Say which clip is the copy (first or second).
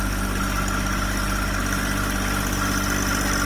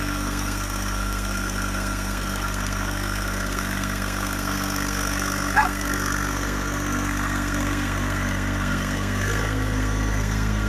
second